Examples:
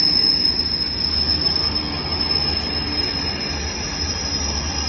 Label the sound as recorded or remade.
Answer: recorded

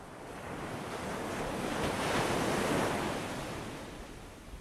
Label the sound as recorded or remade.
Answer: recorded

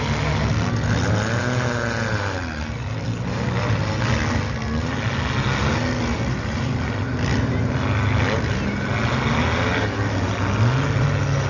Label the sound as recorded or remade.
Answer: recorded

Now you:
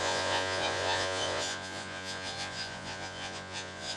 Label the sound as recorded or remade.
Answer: remade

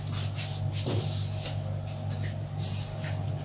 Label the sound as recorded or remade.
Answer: recorded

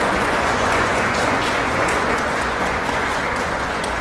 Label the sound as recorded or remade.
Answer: remade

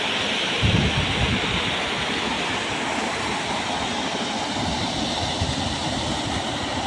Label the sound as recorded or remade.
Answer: recorded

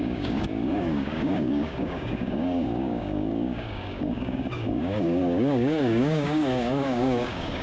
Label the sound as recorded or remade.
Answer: remade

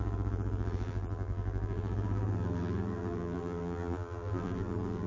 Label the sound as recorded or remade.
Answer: remade